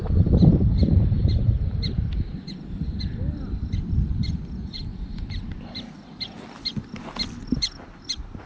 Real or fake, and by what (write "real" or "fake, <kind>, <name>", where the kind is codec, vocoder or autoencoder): fake, vocoder, BigVGAN v2